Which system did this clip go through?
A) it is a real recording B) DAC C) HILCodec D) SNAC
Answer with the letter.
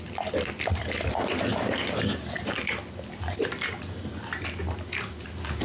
A